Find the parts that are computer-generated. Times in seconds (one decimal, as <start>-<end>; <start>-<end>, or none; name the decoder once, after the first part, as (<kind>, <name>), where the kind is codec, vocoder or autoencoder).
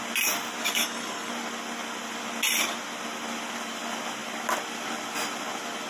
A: 0.6-1.3 (codec, DAC)